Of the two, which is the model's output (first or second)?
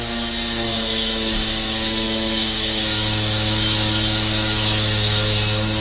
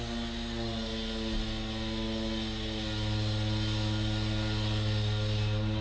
first